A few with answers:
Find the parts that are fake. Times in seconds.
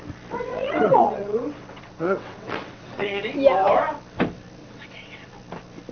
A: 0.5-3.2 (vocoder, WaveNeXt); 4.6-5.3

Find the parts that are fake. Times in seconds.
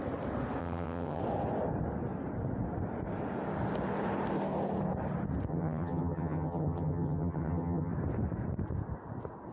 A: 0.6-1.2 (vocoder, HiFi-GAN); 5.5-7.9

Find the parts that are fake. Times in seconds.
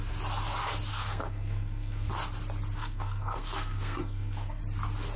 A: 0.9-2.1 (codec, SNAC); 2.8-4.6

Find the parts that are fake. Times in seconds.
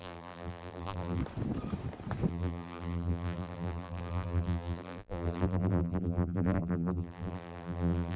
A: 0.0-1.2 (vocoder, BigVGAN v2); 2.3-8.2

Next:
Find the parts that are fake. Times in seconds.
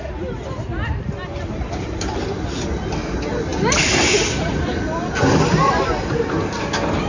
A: none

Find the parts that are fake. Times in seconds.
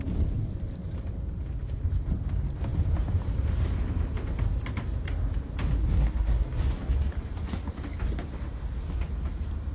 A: 5.8-6.6 (codec, SNAC)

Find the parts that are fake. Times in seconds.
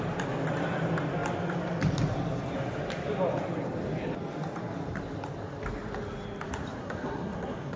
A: 6.8-7.8 (codec, SNAC)